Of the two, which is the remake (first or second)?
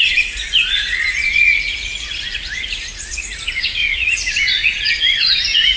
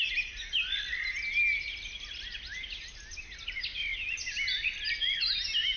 first